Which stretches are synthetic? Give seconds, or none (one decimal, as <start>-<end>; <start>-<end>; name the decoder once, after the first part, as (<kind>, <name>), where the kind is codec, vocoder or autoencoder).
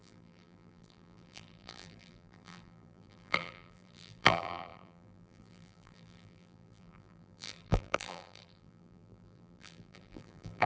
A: 0.0-10.7 (vocoder, BigVGAN v2)